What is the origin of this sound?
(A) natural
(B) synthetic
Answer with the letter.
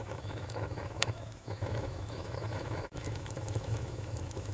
B